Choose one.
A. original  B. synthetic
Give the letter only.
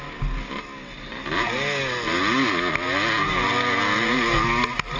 A